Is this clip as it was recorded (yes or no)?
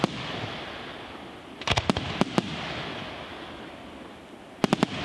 yes